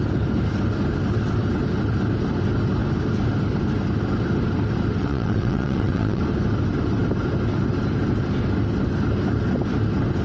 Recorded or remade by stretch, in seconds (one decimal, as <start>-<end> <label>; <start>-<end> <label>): 0.0-5.0 recorded; 5.0-6.2 remade; 6.2-10.2 recorded